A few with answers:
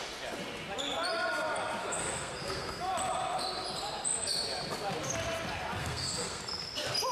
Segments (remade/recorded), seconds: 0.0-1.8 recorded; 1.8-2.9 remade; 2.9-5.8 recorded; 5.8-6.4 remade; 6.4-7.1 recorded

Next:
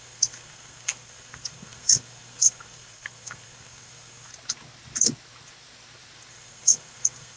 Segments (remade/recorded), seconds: 0.0-4.3 remade; 4.3-6.3 recorded; 6.3-7.4 remade

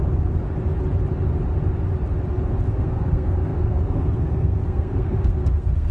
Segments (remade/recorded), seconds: 0.0-2.7 recorded; 2.7-5.9 remade